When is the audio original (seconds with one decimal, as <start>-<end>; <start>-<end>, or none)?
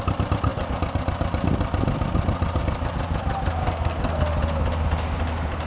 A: 0.0-3.6; 4.2-5.7